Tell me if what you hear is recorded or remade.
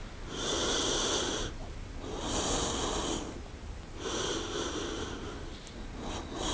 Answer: recorded